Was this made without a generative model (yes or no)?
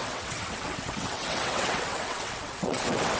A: no